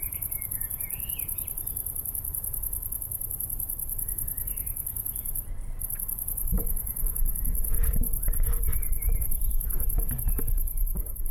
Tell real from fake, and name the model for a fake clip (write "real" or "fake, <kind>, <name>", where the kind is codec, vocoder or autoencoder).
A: fake, vocoder, BigVGAN v2